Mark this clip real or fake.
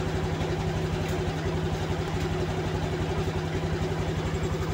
real